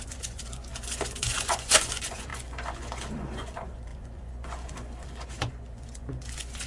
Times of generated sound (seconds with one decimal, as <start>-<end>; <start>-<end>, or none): 0.0-6.7